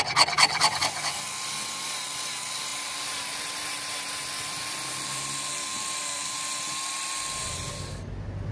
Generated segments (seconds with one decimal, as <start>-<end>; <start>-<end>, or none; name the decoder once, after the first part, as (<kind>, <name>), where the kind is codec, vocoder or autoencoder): none